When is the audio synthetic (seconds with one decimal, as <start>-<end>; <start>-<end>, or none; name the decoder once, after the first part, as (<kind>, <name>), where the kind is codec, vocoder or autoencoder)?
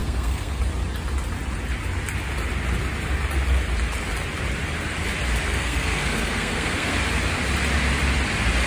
0.0-0.6 (codec, SNAC); 5.5-6.9